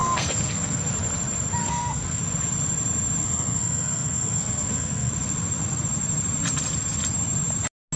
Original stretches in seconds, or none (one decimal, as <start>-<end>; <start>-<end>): 0.8-1.6; 2.2-3.2; 5.1-8.0